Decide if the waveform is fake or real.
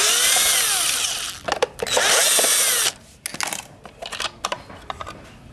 real